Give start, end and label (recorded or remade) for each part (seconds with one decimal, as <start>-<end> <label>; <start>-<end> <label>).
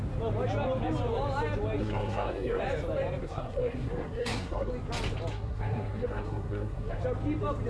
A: 0.0-1.8 recorded; 1.8-2.6 remade; 2.6-3.2 recorded; 3.2-4.7 remade; 4.7-5.3 recorded; 5.3-7.0 remade; 7.0-7.7 recorded